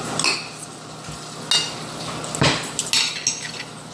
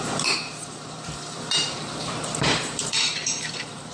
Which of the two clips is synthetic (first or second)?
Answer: second